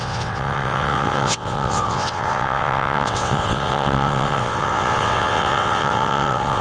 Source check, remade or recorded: remade